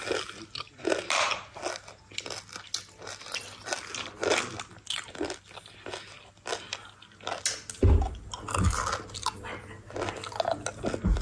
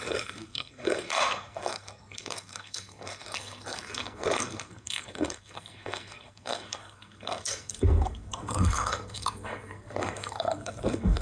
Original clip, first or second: first